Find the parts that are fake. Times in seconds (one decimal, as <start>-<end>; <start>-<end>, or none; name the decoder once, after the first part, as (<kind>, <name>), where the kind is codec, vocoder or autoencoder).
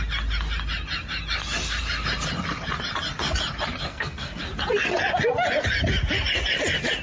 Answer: 3.9-4.4 (codec, SNAC)